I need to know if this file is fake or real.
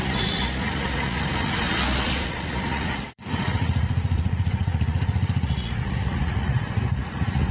fake